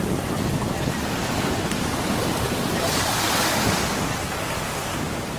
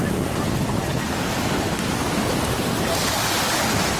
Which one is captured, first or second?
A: second